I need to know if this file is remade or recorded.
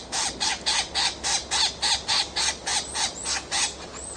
recorded